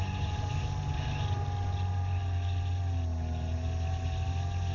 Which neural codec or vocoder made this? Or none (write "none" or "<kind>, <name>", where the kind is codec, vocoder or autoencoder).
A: none